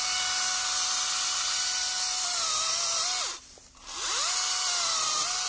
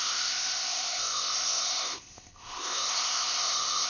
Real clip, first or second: first